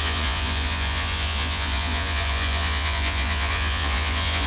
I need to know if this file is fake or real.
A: fake